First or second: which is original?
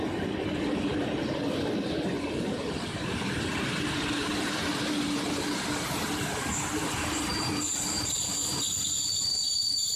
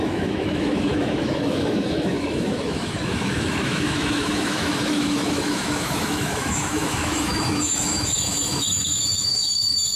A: first